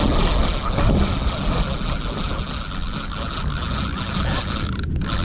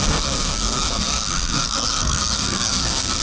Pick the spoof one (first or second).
second